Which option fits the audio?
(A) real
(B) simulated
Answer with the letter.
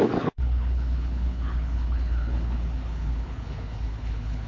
B